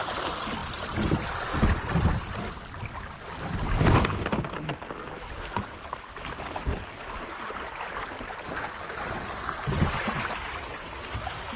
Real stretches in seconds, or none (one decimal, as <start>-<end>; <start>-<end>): 0.0-11.6